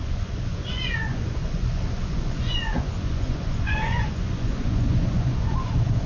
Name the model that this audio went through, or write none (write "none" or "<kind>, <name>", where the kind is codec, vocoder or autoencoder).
vocoder, Vocos